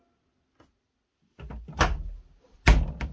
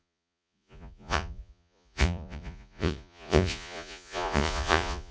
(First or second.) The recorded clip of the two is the first